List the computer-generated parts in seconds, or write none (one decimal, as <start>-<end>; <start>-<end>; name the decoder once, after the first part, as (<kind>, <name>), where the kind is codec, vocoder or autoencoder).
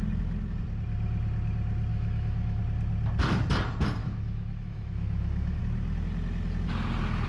1.9-2.6 (autoencoder, DAC-VAE); 4.0-5.6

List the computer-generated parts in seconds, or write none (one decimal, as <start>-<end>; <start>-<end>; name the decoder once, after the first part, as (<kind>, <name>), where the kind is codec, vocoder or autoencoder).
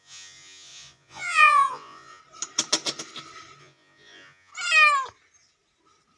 0.0-2.2 (vocoder, Vocos); 3.6-4.5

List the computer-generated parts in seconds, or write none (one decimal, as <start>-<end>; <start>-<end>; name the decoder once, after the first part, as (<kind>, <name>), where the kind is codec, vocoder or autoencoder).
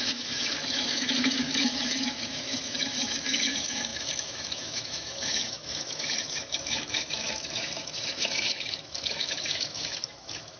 0.0-10.6 (autoencoder, DAC-VAE)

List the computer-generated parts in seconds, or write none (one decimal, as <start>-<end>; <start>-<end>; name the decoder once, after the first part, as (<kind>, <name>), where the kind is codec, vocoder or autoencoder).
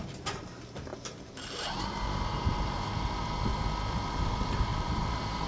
0.0-3.5 (vocoder, BigVGAN v2); 4.1-5.5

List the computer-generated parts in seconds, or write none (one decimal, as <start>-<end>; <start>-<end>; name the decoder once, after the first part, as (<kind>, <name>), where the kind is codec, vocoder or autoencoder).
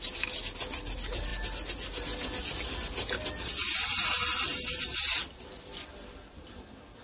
none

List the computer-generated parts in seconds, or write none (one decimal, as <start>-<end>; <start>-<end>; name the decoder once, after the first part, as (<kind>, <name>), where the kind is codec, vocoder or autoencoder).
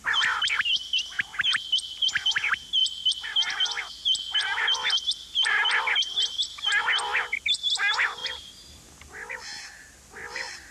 none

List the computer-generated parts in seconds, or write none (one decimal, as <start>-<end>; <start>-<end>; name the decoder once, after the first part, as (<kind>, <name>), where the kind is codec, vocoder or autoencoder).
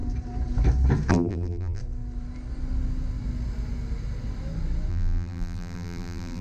1.1-1.8 (vocoder, BigVGAN v2); 4.9-6.4